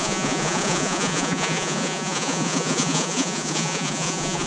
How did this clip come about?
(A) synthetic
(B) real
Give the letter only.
A